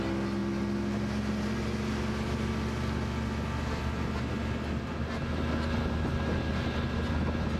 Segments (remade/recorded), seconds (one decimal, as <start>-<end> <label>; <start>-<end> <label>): 0.0-7.6 recorded